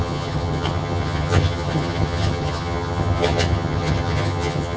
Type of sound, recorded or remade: remade